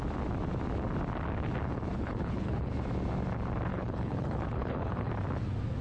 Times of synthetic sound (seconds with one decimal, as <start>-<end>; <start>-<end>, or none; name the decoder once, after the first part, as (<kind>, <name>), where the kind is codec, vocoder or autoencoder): 1.9-2.7 (codec, HILCodec); 3.7-5.1